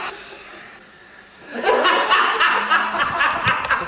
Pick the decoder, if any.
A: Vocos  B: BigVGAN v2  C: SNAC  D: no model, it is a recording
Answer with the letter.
B